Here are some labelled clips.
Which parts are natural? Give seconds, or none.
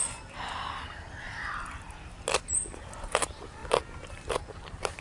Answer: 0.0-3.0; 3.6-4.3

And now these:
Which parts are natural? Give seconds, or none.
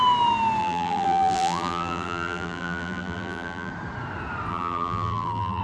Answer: 0.0-0.6; 3.7-4.5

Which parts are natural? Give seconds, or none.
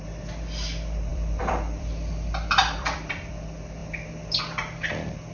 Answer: 0.0-1.1; 1.9-2.6; 3.3-5.3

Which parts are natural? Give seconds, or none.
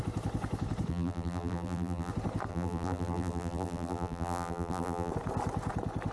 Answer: 0.0-0.9; 2.1-2.5; 5.1-6.1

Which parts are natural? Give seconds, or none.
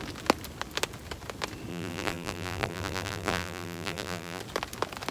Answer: 0.0-1.7; 4.4-5.1